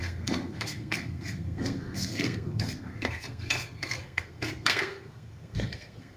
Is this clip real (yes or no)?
no